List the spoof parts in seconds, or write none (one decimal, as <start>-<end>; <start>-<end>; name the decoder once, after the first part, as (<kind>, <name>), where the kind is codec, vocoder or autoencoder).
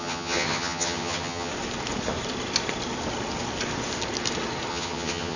0.0-1.5 (vocoder, HiFi-GAN); 4.7-5.4